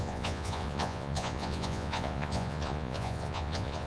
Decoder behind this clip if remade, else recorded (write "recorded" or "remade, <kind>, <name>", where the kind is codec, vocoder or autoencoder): remade, vocoder, Vocos